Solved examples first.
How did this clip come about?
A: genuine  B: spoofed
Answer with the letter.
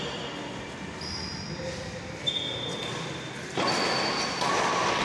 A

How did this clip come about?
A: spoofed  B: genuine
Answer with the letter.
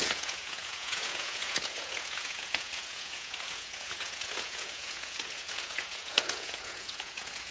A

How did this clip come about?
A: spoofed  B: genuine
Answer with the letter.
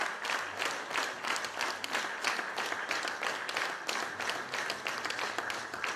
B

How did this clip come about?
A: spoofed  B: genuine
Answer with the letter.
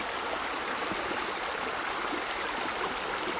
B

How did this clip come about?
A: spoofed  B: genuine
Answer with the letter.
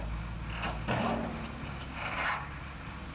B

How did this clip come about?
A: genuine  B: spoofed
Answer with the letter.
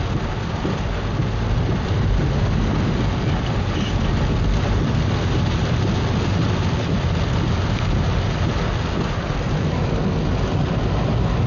A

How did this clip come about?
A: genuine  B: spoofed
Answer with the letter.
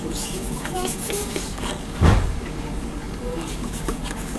B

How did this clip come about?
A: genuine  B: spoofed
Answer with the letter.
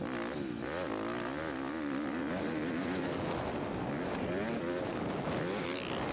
A